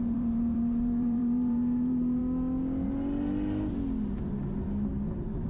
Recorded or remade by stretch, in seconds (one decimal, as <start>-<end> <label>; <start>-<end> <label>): 0.0-2.2 remade; 2.2-5.5 recorded